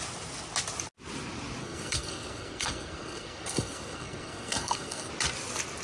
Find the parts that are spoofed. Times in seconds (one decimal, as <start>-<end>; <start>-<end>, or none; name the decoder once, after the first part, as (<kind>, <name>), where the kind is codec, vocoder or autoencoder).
1.6-5.1 (codec, SNAC)